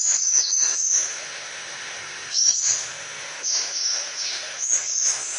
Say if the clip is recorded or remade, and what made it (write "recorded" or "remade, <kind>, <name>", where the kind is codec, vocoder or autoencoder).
remade, autoencoder, DAC-VAE